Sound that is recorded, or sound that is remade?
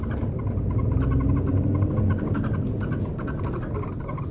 recorded